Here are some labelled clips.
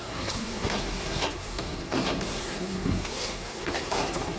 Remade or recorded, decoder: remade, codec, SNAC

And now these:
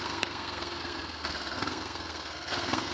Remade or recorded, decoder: remade, codec, SNAC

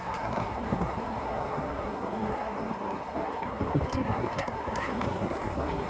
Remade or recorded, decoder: remade, codec, SNAC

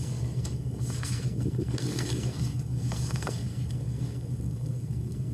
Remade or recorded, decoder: remade, codec, SNAC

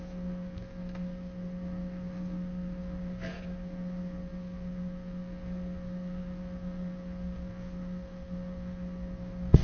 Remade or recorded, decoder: remade, codec, SNAC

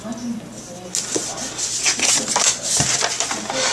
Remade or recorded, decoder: recorded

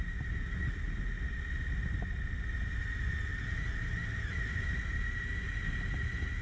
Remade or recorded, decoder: recorded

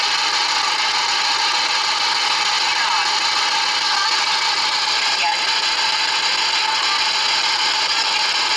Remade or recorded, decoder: recorded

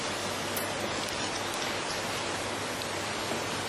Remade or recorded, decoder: recorded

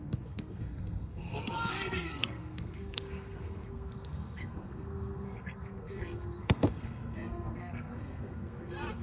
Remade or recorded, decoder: remade, codec, SNAC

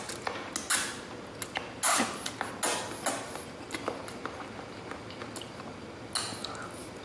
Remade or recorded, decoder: recorded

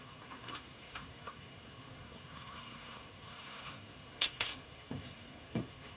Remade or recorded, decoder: remade, codec, SNAC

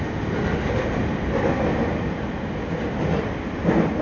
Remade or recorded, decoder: recorded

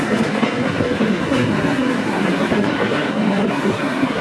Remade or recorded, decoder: remade, codec, SNAC